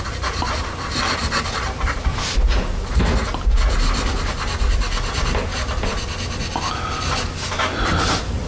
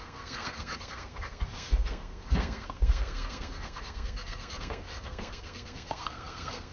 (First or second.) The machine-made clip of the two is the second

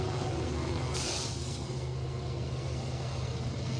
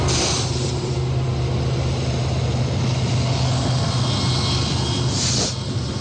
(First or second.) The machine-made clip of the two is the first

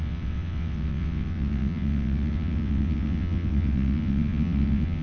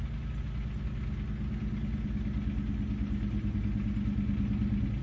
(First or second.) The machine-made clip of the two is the first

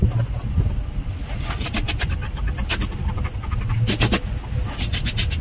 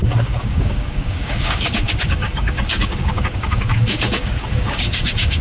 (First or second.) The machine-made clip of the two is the second